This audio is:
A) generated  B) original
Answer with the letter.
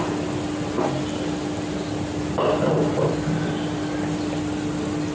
B